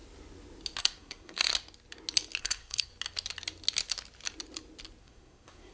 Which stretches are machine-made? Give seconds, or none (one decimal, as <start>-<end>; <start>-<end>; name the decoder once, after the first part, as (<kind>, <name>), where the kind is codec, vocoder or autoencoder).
0.8-1.5 (codec, SNAC); 2.4-2.9; 5.0-5.7